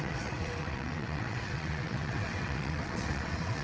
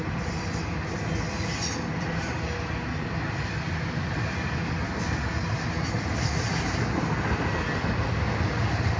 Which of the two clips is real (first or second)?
second